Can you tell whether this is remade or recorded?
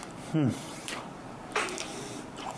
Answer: remade